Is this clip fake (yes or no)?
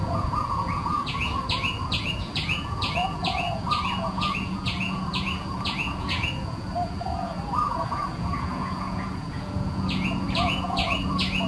yes